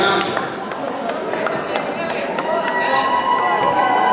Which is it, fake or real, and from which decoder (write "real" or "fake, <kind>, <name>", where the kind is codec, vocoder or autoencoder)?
real